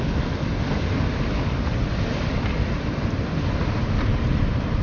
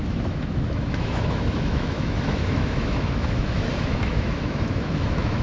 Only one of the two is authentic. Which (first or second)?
first